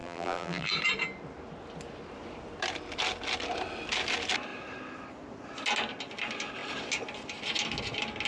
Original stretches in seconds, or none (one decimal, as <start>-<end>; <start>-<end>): 0.7-8.3